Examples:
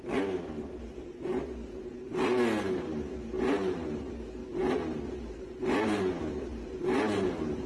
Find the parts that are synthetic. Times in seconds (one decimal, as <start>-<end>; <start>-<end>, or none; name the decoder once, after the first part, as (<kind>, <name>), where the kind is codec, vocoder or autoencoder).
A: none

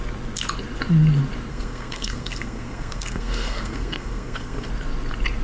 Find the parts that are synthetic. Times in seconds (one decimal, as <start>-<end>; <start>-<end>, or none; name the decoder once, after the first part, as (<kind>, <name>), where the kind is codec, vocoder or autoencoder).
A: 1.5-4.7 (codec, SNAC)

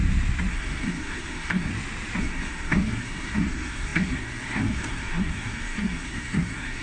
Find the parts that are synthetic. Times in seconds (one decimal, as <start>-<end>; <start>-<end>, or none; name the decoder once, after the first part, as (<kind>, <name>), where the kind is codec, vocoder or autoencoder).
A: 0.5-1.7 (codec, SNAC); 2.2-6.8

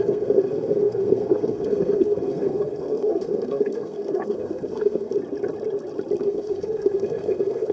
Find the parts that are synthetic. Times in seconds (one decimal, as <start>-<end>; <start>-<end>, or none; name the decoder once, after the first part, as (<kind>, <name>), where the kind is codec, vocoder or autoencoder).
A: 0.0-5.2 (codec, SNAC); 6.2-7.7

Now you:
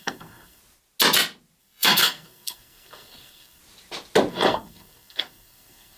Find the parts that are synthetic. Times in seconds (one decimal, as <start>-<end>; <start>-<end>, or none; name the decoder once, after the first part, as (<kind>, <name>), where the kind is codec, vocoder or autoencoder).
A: 0.0-0.6 (codec, SNAC); 1.6-3.6; 4.3-6.0

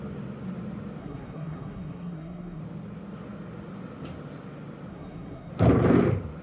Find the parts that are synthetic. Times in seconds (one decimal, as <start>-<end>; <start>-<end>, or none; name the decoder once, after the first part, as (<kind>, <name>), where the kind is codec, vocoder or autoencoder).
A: 1.0-2.6 (codec, SNAC); 4.9-5.5